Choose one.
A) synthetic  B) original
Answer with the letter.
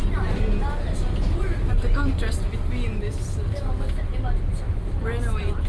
B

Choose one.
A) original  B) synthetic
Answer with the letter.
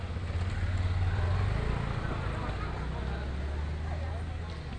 A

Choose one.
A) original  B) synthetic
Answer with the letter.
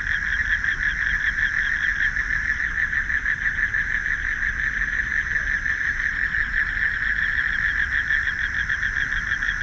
B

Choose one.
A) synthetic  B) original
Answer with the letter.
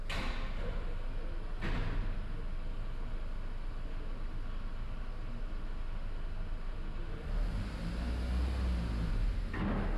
B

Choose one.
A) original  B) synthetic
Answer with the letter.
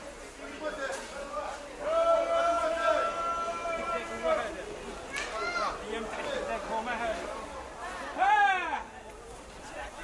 A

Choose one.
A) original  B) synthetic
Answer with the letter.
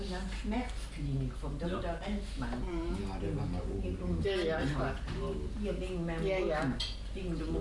A